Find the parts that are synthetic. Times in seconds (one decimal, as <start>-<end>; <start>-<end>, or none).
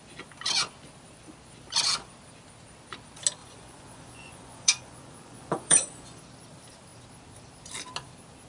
3.4-6.2